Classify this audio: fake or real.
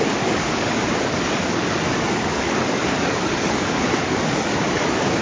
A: fake